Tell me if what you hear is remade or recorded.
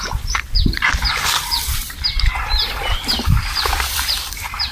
remade